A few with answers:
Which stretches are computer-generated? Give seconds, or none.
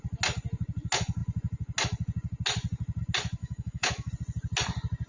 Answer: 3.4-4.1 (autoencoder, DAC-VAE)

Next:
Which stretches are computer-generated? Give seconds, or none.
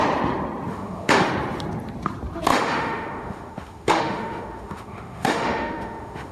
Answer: 0.7-1.3 (autoencoder, DAC-VAE); 2.5-6.3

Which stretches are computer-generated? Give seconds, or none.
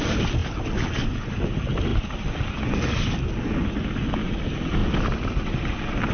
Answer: none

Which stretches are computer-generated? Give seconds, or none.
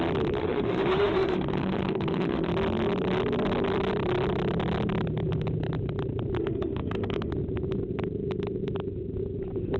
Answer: 0.4-2.5 (autoencoder, DAC-VAE); 6.4-7.3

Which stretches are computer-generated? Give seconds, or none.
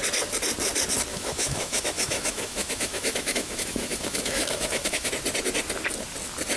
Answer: 1.1-5.1 (autoencoder, DAC-VAE)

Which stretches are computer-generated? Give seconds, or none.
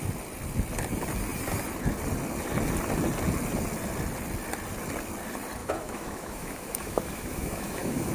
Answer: 5.6-8.1 (autoencoder, DAC-VAE)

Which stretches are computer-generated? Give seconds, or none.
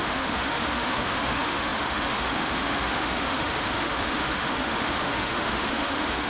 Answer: 0.0-6.3 (autoencoder, DAC-VAE)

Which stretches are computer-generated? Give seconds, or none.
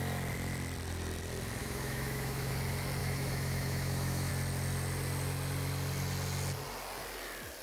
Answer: 1.6-2.5 (autoencoder, DAC-VAE); 3.0-4.3